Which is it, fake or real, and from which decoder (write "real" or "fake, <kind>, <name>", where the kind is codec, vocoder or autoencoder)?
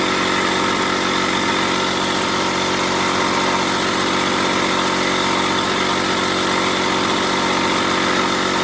real